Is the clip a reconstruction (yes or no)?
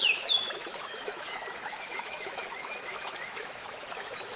yes